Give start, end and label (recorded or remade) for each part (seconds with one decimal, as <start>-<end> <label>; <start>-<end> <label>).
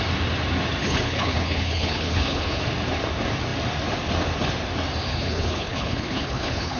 0.0-0.8 recorded; 0.8-2.6 remade; 2.6-5.1 recorded; 5.1-6.8 remade